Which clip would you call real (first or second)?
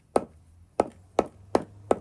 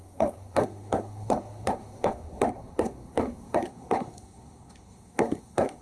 first